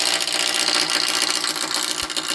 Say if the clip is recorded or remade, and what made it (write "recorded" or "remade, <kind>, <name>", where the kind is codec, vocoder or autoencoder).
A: recorded